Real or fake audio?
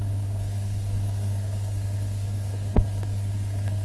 fake